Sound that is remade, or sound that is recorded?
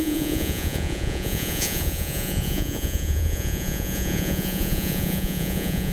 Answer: remade